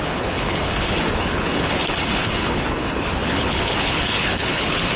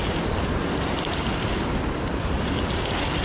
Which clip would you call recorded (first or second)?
second